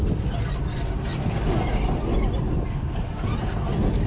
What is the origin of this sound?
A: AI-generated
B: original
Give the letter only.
B